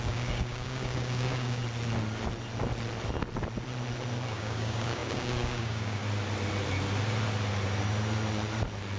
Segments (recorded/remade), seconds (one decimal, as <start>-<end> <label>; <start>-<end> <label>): 0.0-1.6 remade; 1.6-4.3 recorded; 4.3-6.0 remade; 6.0-9.0 recorded